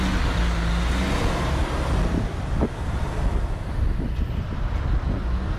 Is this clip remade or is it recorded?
recorded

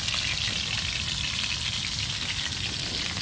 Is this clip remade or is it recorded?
recorded